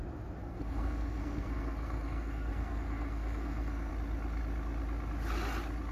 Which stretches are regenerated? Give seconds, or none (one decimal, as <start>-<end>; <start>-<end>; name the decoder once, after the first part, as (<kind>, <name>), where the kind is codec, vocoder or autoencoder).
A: 0.4-3.9 (codec, SNAC)

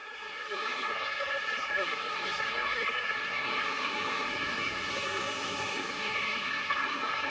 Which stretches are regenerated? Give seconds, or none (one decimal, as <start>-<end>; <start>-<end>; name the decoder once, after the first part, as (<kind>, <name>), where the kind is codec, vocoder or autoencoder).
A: 0.0-7.3 (codec, SNAC)

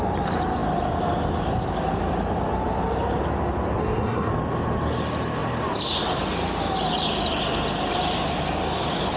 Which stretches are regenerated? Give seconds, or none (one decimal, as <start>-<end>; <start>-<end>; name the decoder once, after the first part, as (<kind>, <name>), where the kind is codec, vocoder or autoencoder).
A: 3.8-4.3 (codec, SNAC)

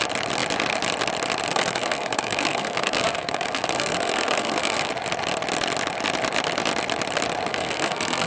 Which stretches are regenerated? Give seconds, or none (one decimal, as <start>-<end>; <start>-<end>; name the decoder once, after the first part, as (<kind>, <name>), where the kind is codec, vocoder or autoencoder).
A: 1.5-4.9 (codec, SNAC); 7.5-8.3